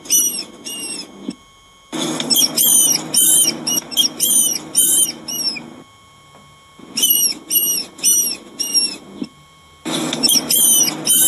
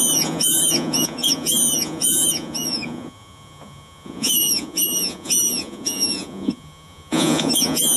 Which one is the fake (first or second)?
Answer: second